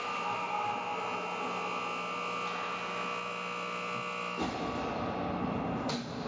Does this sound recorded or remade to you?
recorded